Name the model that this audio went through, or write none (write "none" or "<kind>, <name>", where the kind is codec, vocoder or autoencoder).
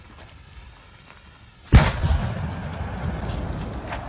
none